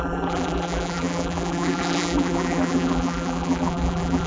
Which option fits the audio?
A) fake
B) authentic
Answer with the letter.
A